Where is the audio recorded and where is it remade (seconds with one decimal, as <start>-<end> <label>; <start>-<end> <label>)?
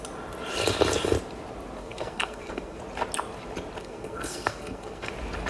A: 0.0-1.8 recorded; 1.8-2.8 remade; 2.8-3.8 recorded; 3.8-5.1 remade; 5.1-5.5 recorded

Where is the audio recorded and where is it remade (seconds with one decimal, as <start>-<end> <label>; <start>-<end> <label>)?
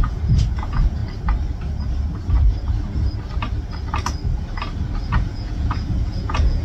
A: 0.0-1.0 remade; 1.0-5.0 recorded; 5.0-6.6 remade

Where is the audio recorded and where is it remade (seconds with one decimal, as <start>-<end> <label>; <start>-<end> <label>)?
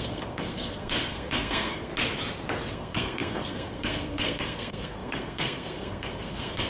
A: 0.0-1.9 remade; 1.9-2.7 recorded; 2.7-6.7 remade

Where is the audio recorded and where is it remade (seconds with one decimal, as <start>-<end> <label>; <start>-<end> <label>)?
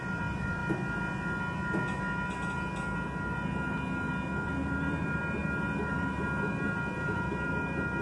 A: 0.0-0.6 remade; 0.6-4.5 recorded; 4.5-5.4 remade; 5.4-5.9 recorded; 5.9-8.0 remade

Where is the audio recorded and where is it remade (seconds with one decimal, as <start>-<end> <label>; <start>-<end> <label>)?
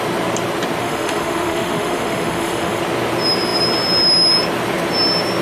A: 0.0-0.8 recorded; 0.8-2.8 remade; 2.8-5.4 recorded